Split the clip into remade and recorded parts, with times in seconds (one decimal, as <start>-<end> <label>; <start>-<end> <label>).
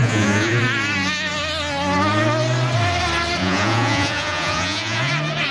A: 0.0-0.6 remade; 0.6-3.4 recorded; 3.4-5.1 remade; 5.1-5.5 recorded